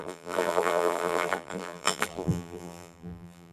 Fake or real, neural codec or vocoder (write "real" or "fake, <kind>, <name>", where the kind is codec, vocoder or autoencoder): fake, vocoder, BigVGAN v2